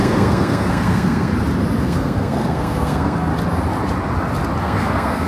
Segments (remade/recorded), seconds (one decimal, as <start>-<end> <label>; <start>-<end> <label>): 0.0-1.3 remade; 1.3-1.8 recorded; 1.8-3.3 remade; 3.3-4.6 recorded; 4.6-5.3 remade